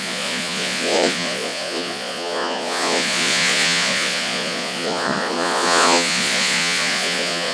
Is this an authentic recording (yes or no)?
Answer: no